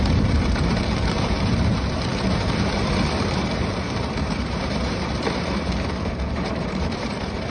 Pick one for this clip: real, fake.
fake